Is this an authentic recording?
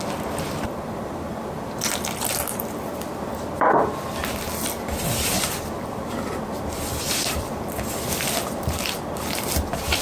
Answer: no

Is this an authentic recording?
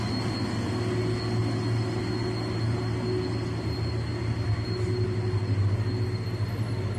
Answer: yes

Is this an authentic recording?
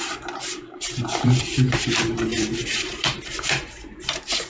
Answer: no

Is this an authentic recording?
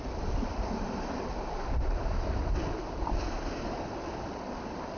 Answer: no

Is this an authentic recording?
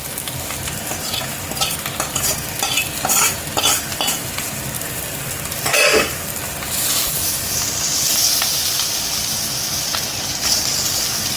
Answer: yes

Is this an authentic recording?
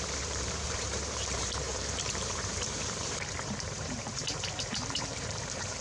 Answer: no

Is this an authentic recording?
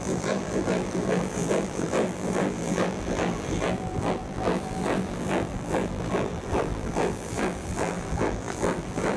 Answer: no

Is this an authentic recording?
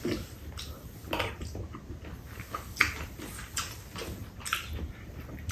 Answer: yes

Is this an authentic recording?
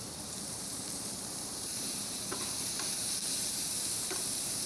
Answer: no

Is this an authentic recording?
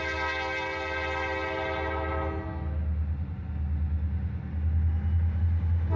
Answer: yes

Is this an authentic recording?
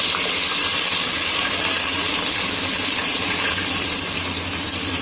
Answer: no